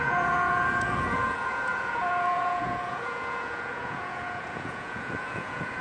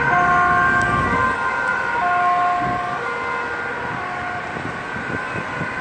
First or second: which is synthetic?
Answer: first